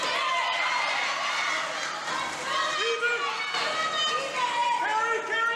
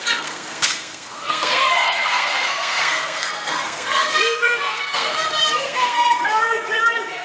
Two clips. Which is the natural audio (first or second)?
first